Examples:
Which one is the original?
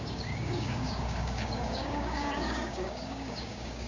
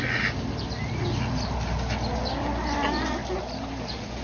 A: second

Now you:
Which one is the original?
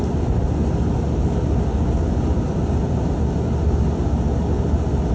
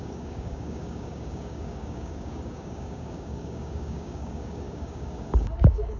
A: first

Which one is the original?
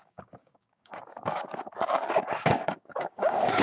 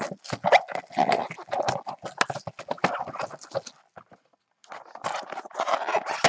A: second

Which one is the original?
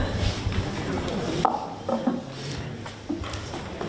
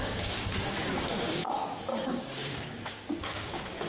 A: first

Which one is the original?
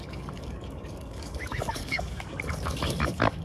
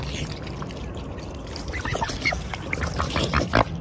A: second